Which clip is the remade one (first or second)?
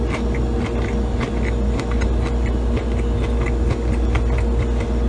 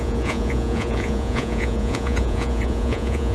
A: second